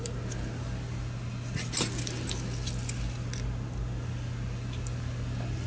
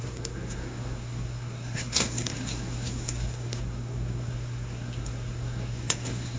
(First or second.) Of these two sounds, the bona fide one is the first